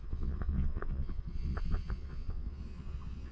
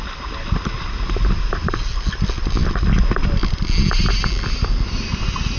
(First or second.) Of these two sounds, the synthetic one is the first